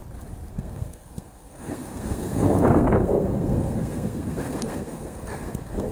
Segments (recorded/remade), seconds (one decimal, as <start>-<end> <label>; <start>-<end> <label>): 0.0-0.5 recorded; 0.5-5.9 remade